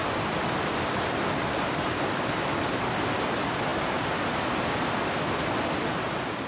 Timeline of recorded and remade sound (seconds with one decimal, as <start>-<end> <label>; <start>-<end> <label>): 0.0-6.5 recorded